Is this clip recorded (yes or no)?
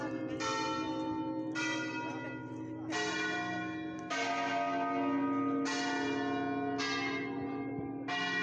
yes